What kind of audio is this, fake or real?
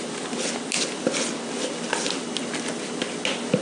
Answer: real